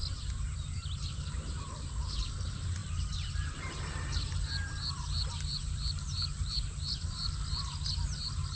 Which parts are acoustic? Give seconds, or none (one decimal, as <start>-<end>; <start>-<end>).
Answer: 0.0-8.6